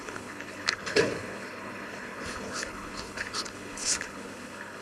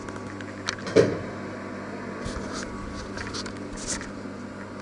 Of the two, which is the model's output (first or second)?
first